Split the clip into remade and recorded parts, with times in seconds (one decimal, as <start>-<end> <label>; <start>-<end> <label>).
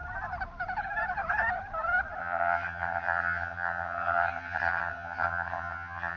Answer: 0.0-2.2 recorded; 2.2-6.2 remade